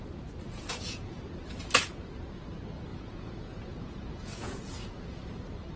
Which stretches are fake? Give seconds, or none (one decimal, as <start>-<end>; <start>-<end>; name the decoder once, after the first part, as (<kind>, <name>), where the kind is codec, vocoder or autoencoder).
0.5-1.2 (vocoder, Vocos); 2.9-5.3